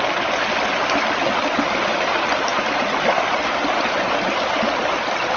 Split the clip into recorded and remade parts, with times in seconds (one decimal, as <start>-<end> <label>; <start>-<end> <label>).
0.0-5.4 recorded